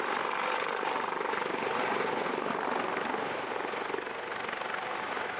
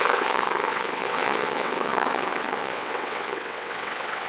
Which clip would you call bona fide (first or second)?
first